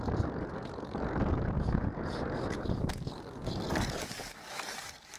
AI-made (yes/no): yes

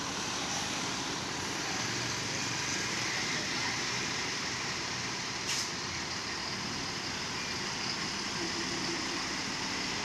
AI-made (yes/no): yes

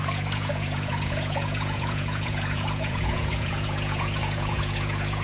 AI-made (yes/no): yes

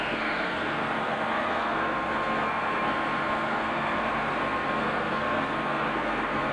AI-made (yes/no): yes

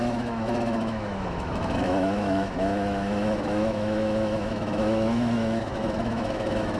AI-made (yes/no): yes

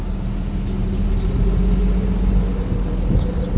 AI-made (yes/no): no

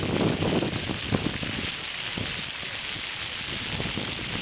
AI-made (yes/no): no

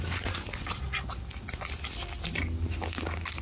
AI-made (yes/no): no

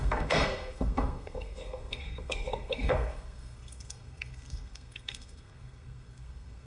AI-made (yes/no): yes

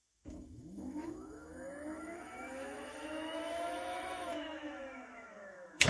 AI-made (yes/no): yes